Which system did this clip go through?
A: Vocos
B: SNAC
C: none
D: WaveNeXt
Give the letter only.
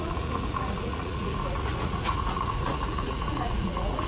A